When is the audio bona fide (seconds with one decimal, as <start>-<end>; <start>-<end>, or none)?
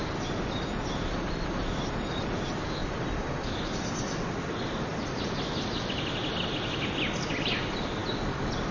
0.0-8.7